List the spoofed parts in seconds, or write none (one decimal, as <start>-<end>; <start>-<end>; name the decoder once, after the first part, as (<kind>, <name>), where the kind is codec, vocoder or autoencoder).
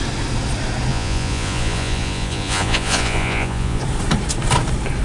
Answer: 0.9-3.8 (vocoder, Vocos)